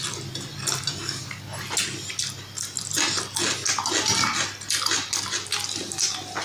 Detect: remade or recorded recorded